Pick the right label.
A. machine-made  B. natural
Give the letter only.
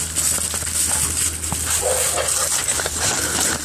B